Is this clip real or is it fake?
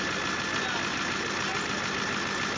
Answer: real